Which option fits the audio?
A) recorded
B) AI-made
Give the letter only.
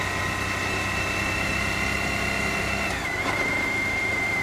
A